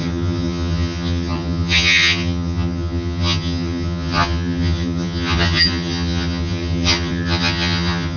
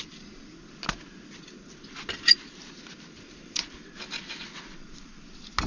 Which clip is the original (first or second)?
second